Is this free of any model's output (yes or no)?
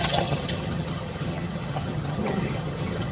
no